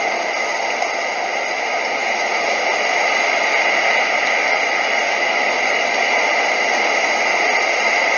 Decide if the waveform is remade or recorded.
recorded